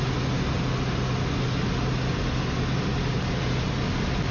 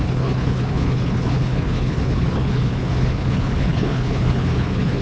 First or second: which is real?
first